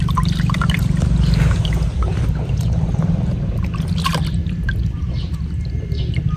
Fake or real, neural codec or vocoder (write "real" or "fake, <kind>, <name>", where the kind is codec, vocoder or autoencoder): real